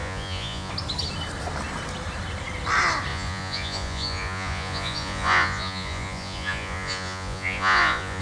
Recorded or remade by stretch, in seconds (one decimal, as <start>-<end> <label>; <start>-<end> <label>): 0.0-0.7 remade; 0.7-3.1 recorded; 3.1-8.2 remade